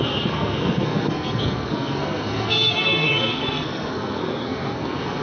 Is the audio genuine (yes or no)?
no